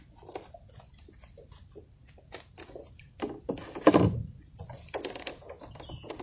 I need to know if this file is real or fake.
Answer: real